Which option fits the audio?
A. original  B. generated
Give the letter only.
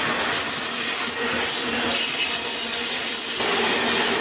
A